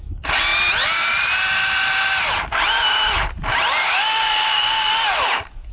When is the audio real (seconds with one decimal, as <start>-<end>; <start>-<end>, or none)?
0.0-3.8; 4.9-5.7